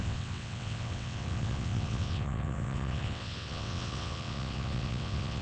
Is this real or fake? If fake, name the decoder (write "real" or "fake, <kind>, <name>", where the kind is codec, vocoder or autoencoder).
fake, vocoder, WaveNeXt